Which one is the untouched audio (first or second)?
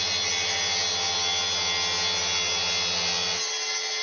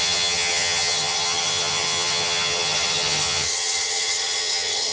first